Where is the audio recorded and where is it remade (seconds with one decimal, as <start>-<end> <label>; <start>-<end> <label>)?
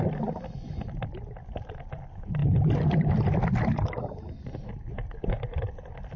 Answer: 0.0-6.2 recorded